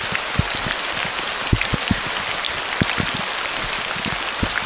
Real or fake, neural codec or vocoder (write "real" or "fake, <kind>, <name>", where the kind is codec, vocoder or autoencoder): real